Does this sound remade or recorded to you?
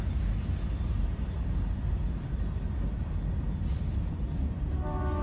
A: recorded